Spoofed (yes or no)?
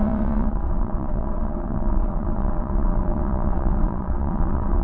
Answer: yes